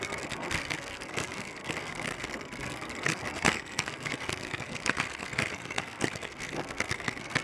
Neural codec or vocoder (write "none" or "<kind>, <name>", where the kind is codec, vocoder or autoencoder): codec, SNAC